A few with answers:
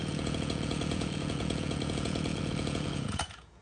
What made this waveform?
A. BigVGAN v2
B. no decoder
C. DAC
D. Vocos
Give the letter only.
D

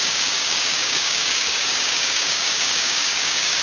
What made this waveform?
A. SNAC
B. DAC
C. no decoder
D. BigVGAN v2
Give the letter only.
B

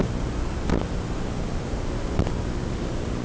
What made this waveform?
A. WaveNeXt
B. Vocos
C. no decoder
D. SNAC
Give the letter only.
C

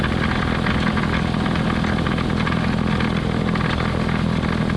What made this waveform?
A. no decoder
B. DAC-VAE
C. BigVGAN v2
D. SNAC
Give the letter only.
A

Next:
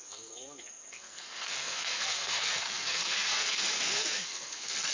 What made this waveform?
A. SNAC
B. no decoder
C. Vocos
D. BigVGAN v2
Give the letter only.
A